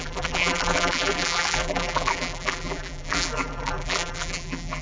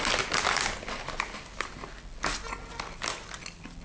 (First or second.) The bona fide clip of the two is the second